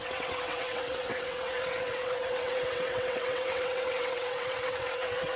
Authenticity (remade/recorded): remade